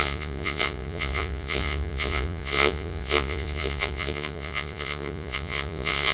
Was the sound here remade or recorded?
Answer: remade